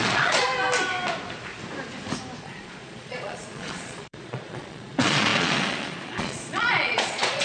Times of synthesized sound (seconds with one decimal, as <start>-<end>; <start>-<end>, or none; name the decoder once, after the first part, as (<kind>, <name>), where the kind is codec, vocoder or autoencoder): 0.0-0.5 (vocoder, Vocos); 2.4-7.4